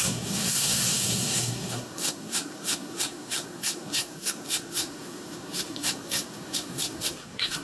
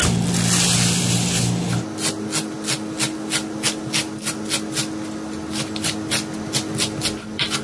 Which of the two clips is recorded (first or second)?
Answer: second